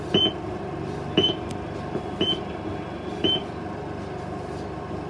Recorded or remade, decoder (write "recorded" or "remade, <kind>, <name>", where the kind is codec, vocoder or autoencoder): recorded